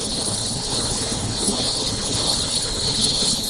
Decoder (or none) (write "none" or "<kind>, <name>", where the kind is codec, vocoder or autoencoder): codec, HILCodec